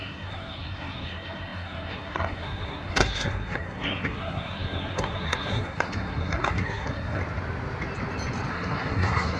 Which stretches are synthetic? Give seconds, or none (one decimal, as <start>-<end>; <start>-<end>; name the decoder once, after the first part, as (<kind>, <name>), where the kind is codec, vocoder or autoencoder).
0.0-7.2 (codec, SNAC); 8.5-9.4